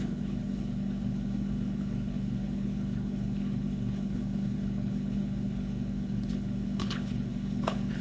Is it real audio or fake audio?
fake